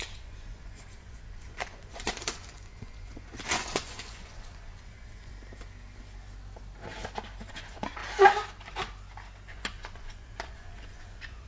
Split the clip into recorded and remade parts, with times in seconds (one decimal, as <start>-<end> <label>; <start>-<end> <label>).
0.0-5.3 remade; 5.3-7.5 recorded; 7.5-8.0 remade; 8.0-9.5 recorded; 9.5-11.5 remade